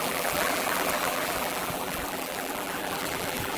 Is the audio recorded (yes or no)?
no